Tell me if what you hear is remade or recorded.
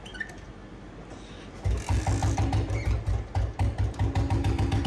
recorded